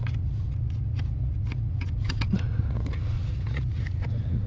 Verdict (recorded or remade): remade